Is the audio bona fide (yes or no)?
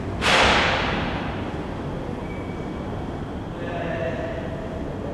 yes